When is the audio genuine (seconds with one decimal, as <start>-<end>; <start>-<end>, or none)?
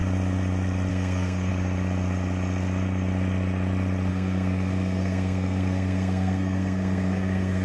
0.0-0.9; 1.5-4.1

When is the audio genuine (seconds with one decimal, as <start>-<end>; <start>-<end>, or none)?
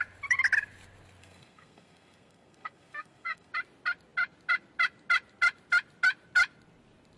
0.0-1.2; 3.5-7.2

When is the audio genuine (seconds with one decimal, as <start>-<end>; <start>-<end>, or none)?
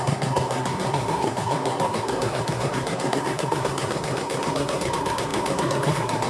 none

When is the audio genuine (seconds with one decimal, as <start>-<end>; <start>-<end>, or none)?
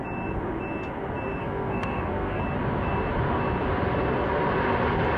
0.0-1.4; 2.4-5.2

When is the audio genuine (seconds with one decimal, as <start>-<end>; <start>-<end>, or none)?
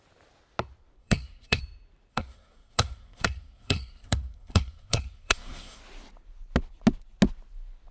0.0-1.0; 1.6-2.1; 5.8-7.9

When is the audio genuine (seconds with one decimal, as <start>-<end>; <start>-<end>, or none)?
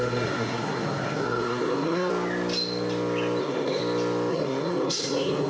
2.1-3.4; 3.8-4.3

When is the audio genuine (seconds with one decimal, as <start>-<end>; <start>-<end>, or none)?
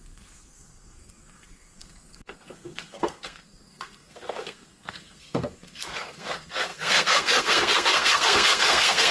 none